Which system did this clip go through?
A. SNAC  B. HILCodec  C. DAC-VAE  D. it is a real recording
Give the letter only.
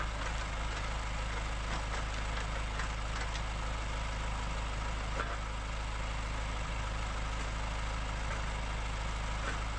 D